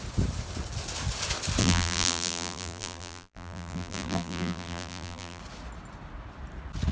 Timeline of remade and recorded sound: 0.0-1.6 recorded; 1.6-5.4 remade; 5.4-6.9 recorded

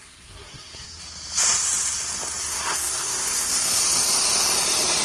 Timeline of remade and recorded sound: 0.0-1.0 remade; 1.0-2.4 recorded; 2.4-3.8 remade; 3.8-5.0 recorded